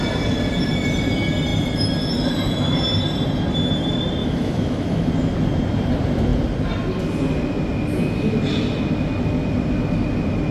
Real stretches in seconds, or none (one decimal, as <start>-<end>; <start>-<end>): 0.0-4.2; 5.1-10.5